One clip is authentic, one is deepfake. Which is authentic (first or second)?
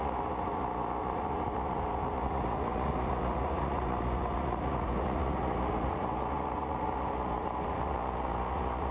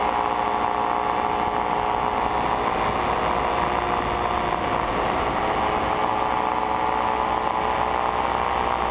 second